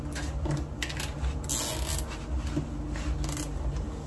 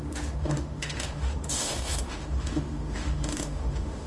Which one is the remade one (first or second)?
second